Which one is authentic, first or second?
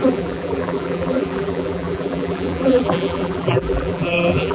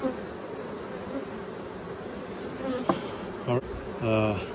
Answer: second